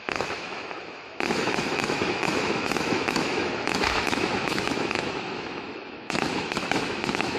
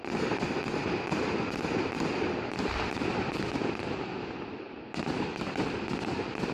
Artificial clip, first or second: first